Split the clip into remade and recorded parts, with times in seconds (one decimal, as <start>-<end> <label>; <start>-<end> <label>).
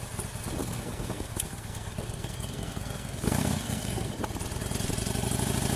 0.0-0.6 recorded; 0.6-4.1 remade; 4.1-5.8 recorded